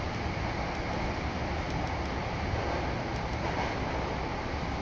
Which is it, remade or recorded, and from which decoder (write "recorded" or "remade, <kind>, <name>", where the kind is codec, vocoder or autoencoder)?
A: recorded